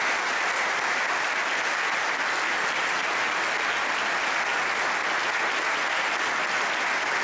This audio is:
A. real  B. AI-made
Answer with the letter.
A